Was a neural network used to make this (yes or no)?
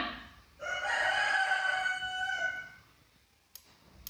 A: no